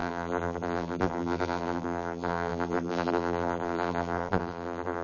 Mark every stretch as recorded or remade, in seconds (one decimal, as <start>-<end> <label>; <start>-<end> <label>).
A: 0.0-5.0 remade